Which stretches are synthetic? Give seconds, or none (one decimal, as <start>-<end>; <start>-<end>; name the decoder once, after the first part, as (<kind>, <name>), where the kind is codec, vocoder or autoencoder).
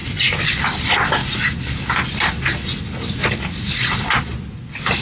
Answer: 0.0-0.6 (vocoder, Vocos)